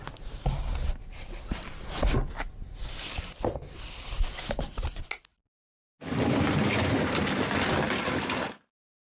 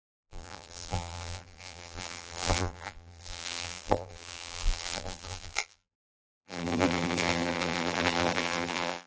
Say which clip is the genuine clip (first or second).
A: first